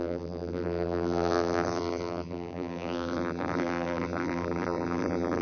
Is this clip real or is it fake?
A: fake